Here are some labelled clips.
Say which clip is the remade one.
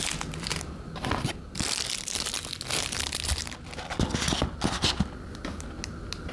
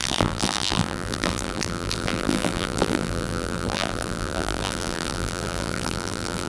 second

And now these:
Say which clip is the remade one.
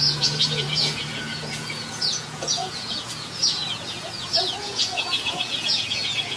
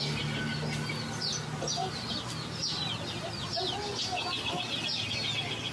first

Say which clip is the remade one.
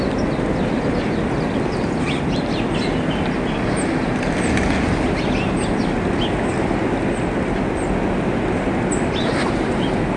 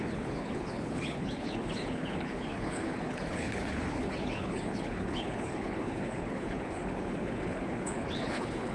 second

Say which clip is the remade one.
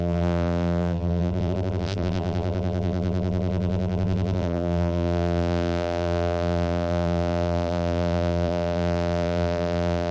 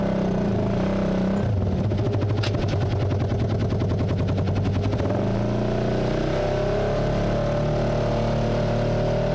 first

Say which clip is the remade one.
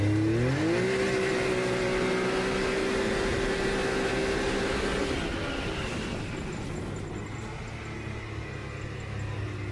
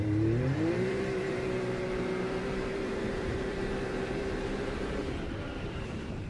second